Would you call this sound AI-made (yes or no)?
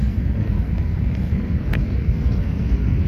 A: yes